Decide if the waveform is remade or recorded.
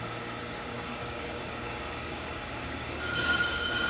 remade